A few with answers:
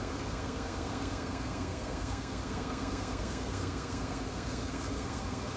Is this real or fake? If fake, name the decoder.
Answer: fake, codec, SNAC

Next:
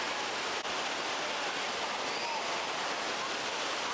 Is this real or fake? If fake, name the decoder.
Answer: real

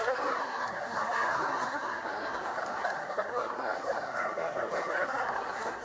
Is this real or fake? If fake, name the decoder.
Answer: fake, codec, SNAC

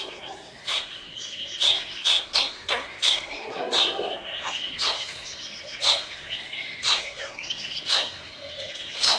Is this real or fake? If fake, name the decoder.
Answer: fake, codec, SNAC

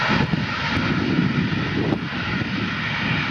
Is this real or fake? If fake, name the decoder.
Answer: real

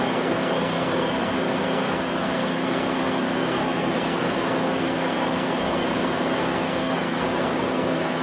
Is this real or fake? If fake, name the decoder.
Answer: fake, codec, SNAC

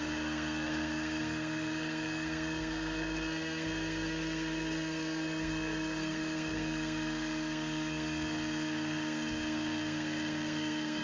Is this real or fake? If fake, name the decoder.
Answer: fake, codec, SNAC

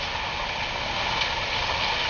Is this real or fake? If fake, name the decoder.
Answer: real